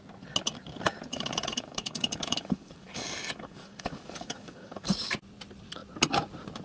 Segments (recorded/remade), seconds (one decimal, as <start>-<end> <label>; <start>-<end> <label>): 0.0-1.1 recorded; 1.1-5.1 remade; 5.1-6.6 recorded